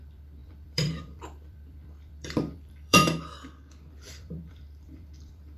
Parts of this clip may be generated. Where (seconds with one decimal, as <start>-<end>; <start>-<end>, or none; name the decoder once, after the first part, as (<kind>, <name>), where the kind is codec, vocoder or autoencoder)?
0.0-3.0 (vocoder, BigVGAN v2); 3.9-5.6